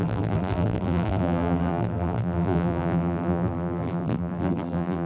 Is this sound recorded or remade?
remade